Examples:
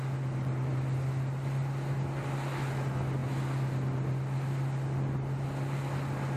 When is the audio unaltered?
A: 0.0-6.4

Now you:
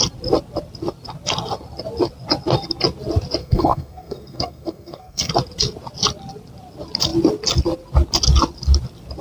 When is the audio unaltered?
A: 0.0-3.4; 5.3-9.2